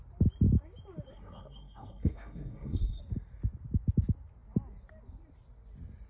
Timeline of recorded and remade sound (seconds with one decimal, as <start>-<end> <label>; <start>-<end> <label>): 0.0-1.1 recorded; 1.1-3.0 remade; 3.0-6.1 recorded